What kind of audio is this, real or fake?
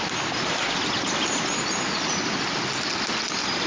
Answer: real